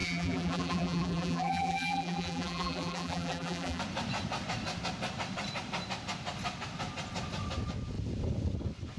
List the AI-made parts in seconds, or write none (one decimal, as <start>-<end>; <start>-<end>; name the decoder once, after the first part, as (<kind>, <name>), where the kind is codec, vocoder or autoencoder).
0.0-3.8 (vocoder, BigVGAN v2)